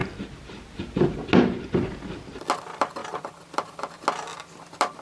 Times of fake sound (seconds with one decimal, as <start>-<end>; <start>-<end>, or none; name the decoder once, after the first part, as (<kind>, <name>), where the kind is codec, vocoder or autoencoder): none